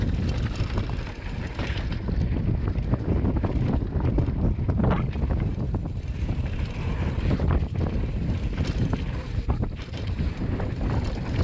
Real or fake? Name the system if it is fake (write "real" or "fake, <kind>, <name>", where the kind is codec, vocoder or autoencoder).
real